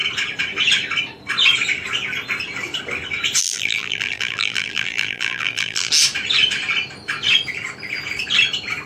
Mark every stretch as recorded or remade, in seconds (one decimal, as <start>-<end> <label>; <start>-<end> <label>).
0.0-3.4 recorded; 3.4-5.9 remade; 5.9-8.9 recorded